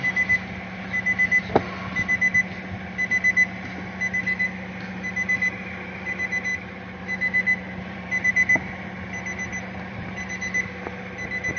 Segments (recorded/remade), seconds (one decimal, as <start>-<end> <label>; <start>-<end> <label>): 0.0-6.5 recorded; 6.5-7.0 remade; 7.0-7.6 recorded; 7.6-8.3 remade; 8.3-9.5 recorded; 9.5-10.3 remade; 10.3-11.6 recorded

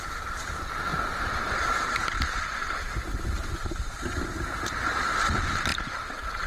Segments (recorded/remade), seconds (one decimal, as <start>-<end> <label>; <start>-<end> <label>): 0.0-0.9 recorded; 0.9-4.5 remade; 4.5-6.5 recorded

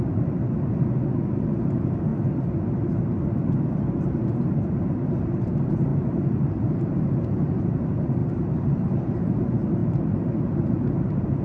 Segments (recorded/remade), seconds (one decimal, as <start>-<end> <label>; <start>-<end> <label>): 0.0-2.1 remade; 2.1-3.5 recorded; 3.5-11.4 remade